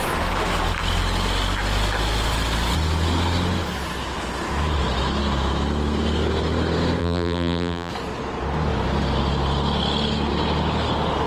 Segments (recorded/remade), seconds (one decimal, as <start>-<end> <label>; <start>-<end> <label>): 0.0-7.0 recorded; 7.0-7.9 remade; 7.9-11.3 recorded

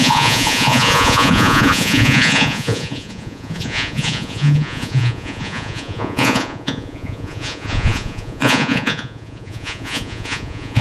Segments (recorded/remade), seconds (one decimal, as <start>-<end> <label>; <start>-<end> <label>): 0.0-10.8 remade

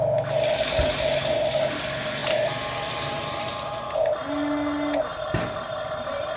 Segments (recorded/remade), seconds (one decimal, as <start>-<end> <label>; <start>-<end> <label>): 0.0-2.2 recorded; 2.2-3.4 remade; 3.4-5.1 recorded; 5.1-6.4 remade

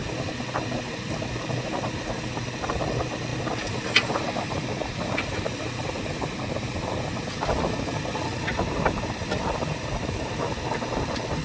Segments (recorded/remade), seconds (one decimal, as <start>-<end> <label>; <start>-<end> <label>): 0.0-11.4 recorded

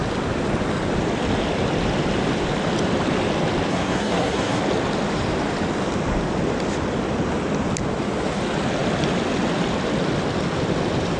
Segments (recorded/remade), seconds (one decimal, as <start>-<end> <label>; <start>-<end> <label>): 0.0-3.7 recorded; 3.7-4.6 remade; 4.6-11.2 recorded